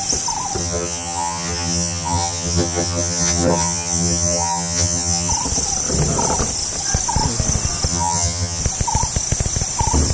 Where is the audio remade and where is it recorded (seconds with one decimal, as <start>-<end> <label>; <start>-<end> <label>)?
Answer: 0.0-0.6 recorded; 0.6-5.3 remade; 5.3-7.9 recorded; 7.9-8.6 remade; 8.6-10.1 recorded